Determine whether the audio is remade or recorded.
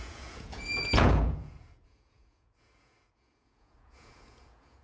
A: remade